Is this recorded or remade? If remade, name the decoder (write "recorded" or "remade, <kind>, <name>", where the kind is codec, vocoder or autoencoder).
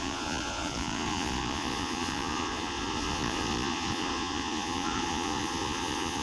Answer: remade, vocoder, Vocos